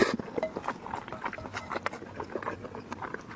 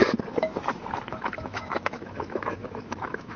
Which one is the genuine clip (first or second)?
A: first